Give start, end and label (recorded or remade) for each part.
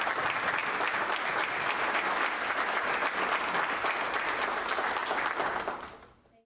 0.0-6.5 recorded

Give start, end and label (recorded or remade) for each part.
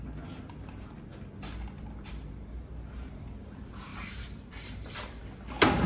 0.0-3.9 recorded; 3.9-4.9 remade; 4.9-5.9 recorded